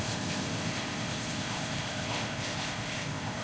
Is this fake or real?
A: fake